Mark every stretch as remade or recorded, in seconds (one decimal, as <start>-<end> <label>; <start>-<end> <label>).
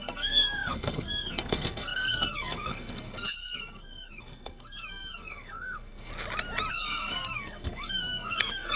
0.0-6.1 remade; 6.1-6.7 recorded; 6.7-8.8 remade